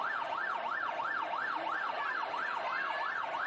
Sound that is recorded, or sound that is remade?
remade